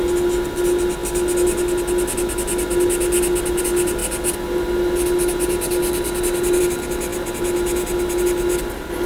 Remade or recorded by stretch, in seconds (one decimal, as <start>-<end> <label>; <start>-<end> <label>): 0.0-9.1 recorded